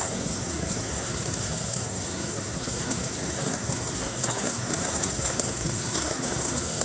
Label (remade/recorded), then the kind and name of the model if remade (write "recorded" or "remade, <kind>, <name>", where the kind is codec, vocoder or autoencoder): remade, codec, SNAC